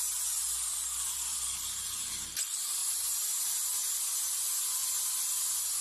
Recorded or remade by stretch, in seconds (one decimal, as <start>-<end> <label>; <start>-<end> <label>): 0.0-5.8 recorded